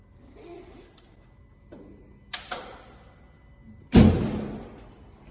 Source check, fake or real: real